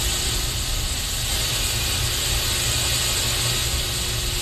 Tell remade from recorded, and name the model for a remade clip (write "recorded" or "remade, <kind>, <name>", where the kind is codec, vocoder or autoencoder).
recorded